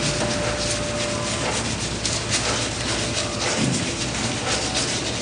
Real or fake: real